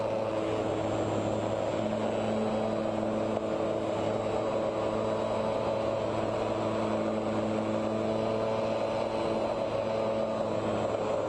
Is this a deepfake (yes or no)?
no